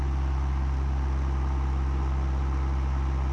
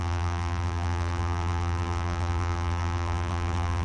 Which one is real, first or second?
first